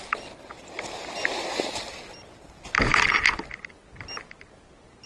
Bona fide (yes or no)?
yes